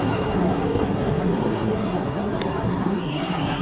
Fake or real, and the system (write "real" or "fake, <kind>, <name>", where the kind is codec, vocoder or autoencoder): fake, codec, SNAC